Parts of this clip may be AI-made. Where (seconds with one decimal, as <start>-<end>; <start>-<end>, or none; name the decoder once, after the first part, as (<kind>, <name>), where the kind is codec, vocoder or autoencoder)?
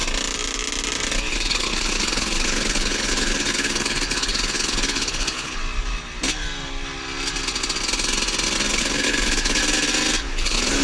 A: 1.3-5.6 (codec, HILCodec); 8.7-9.6; 10.2-10.8